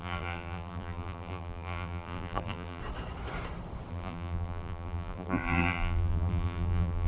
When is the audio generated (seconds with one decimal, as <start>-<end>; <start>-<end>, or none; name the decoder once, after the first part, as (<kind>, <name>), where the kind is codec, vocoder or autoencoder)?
0.0-2.8 (vocoder, BigVGAN v2); 3.9-7.1